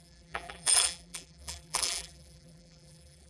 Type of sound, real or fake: fake